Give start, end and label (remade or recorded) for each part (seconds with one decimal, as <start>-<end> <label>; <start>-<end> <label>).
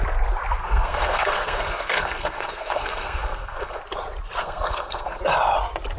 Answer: 0.0-0.6 recorded; 0.6-3.8 remade; 3.8-4.4 recorded; 4.4-5.2 remade; 5.2-6.0 recorded